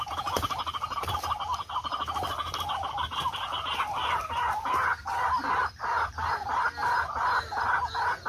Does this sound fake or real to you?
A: real